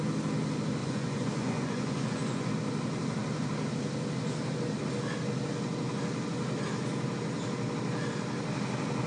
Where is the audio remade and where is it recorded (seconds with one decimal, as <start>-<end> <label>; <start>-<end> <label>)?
0.0-0.8 recorded; 0.8-2.5 remade; 2.5-9.1 recorded